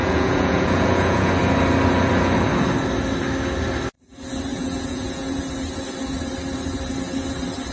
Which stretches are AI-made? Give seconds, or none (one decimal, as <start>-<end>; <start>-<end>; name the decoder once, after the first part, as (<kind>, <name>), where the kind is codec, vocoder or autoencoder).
0.0-1.3 (vocoder, Vocos); 4.5-5.4

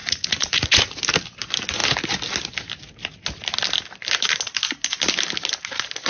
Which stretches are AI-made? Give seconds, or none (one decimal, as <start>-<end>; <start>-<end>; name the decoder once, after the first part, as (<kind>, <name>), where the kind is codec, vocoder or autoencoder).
0.0-0.8 (vocoder, Vocos)

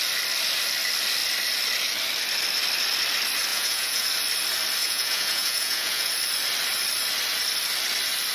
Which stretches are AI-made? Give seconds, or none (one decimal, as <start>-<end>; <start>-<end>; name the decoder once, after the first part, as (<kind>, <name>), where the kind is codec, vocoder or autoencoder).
3.5-4.1 (vocoder, Vocos); 4.8-6.1

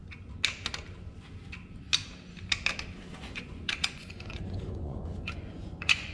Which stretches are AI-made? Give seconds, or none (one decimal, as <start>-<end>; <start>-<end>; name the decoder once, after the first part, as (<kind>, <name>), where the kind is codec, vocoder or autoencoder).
3.2-6.1 (vocoder, Vocos)

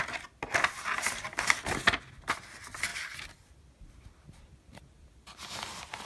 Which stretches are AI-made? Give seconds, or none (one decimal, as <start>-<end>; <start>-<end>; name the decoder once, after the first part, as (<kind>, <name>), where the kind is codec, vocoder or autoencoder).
none